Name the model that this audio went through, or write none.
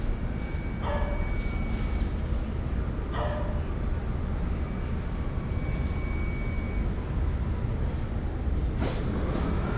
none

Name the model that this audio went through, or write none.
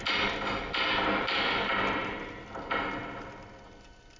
none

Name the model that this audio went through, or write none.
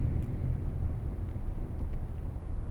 none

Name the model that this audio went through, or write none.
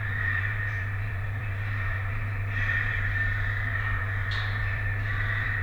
vocoder, BigVGAN v2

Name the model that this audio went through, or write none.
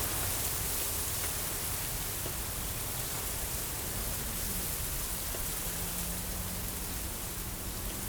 none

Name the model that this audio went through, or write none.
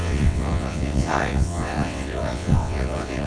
vocoder, WaveNeXt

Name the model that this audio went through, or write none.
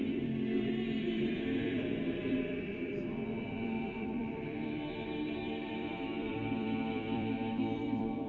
vocoder, BigVGAN v2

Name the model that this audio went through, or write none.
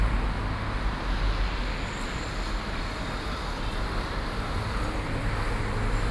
none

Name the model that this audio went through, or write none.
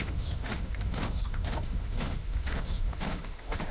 autoencoder, DAC-VAE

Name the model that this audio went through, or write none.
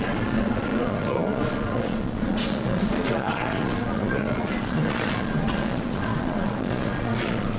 vocoder, Vocos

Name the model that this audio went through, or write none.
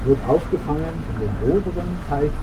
none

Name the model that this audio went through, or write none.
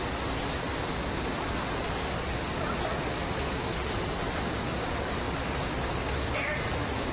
none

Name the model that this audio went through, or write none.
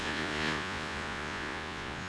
vocoder, Vocos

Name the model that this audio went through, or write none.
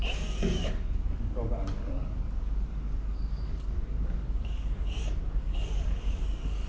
codec, DAC